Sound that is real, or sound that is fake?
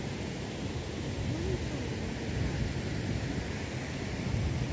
real